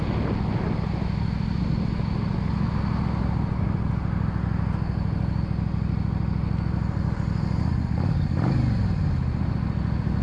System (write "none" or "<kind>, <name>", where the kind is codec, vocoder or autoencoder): none